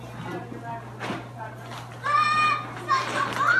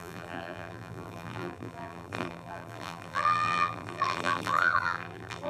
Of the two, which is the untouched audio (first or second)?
first